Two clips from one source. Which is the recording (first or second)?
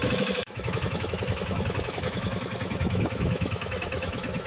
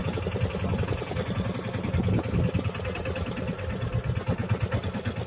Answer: second